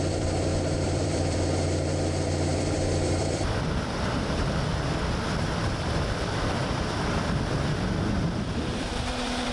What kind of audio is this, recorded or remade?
remade